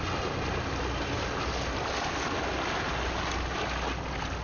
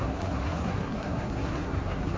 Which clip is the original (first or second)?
first